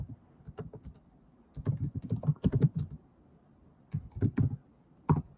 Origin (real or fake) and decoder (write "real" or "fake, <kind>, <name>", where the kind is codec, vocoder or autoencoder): fake, vocoder, BigVGAN v2